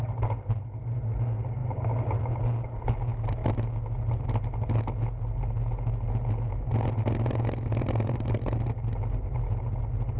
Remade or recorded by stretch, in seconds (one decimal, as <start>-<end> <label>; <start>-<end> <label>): 0.0-10.2 recorded